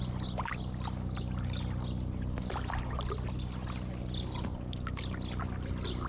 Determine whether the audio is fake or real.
real